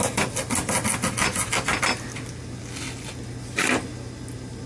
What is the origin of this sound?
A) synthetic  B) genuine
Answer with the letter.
B